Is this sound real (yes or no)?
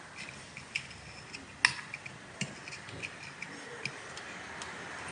yes